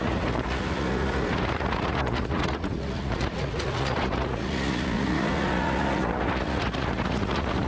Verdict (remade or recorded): remade